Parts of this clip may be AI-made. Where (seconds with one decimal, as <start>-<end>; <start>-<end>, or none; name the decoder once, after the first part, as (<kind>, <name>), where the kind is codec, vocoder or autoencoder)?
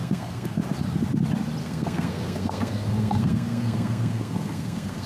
0.0-0.6 (codec, SNAC); 1.6-5.1